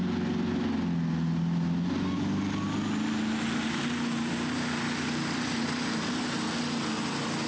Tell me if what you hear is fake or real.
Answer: real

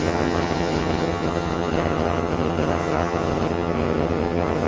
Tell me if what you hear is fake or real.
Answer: fake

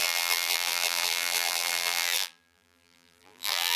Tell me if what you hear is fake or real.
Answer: fake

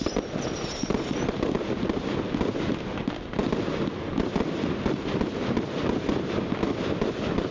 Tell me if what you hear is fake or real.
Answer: real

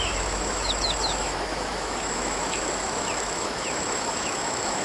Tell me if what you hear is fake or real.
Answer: fake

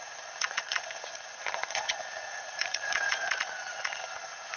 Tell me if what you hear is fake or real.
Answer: fake